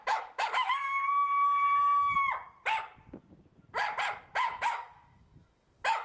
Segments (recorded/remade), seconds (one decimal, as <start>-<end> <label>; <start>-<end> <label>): 0.0-1.0 remade; 1.0-4.6 recorded; 4.6-6.0 remade